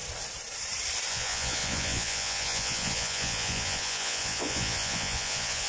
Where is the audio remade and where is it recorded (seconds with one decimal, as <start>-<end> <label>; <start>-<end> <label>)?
0.0-1.1 recorded; 1.1-5.7 remade